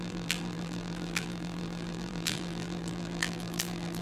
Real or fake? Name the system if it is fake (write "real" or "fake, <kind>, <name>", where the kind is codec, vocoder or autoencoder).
fake, vocoder, BigVGAN v2